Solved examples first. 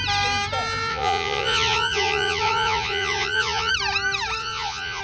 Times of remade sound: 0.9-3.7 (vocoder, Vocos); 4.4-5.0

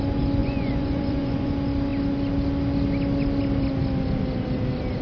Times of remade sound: 0.4-1.5 (vocoder, Vocos)

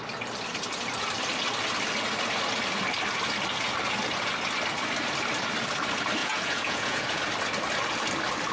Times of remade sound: 6.2-7.2 (vocoder, Vocos)

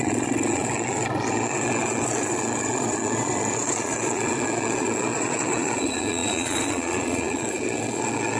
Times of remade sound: 0.0-8.4 (vocoder, Vocos)

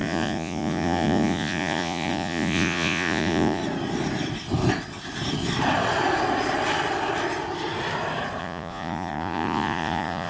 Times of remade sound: 0.0-3.6 (vocoder, Vocos); 8.4-10.3

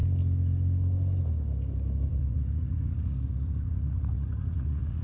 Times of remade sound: 2.1-5.0 (vocoder, Vocos)